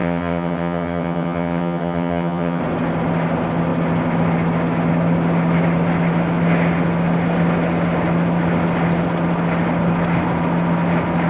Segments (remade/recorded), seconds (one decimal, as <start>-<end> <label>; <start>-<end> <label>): 0.0-2.6 remade; 2.6-11.3 recorded